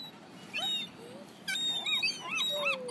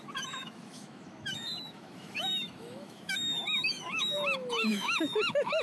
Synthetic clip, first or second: second